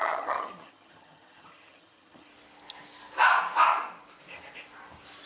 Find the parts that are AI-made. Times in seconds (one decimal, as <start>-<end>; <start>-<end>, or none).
0.0-2.3

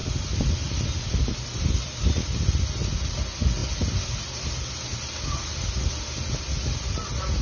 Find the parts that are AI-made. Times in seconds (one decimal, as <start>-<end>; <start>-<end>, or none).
none

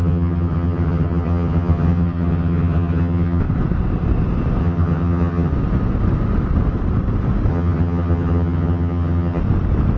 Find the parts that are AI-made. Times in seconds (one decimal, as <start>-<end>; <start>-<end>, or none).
0.0-3.4; 4.6-5.5; 7.5-9.4

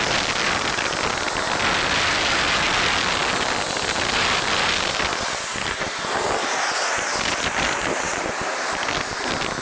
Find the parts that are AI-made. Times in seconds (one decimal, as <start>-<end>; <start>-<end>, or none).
none

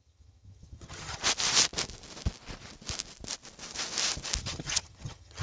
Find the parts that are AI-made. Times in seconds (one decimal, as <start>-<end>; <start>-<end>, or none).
0.0-1.2; 4.4-5.4

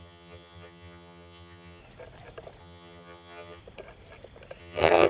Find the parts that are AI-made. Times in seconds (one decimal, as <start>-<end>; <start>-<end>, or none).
0.0-1.8; 2.6-3.6; 4.6-5.1

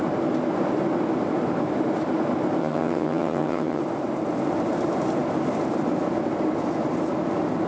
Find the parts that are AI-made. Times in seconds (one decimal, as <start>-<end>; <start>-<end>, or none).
2.6-3.8